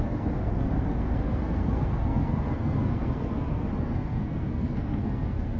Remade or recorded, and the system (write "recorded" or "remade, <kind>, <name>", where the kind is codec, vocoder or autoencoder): remade, codec, SNAC